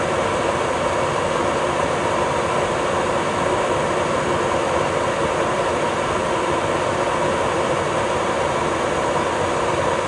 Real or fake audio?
real